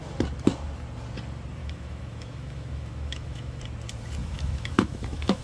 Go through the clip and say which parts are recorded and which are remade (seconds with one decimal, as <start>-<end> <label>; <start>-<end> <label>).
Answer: 0.0-1.6 recorded; 1.6-3.6 remade; 3.6-4.2 recorded; 4.2-5.4 remade